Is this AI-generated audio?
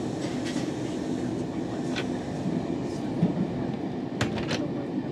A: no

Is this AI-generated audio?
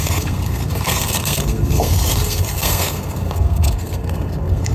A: yes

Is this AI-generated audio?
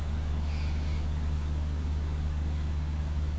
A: yes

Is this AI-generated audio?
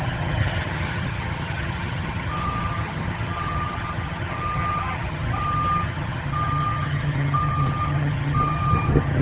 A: yes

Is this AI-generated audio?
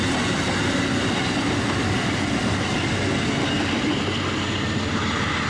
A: no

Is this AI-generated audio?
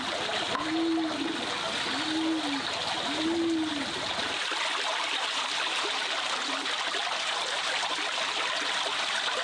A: no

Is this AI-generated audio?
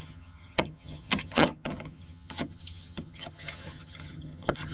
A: yes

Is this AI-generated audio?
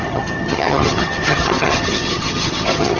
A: yes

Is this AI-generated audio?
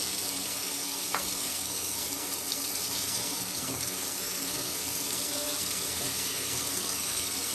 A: yes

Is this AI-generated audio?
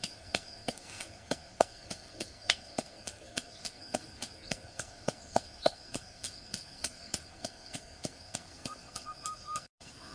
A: yes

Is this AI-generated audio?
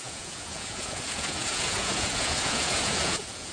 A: yes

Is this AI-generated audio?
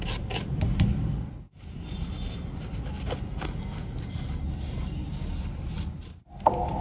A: no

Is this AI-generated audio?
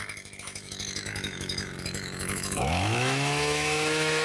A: yes